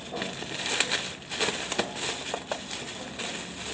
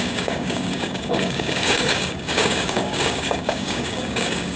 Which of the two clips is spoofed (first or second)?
second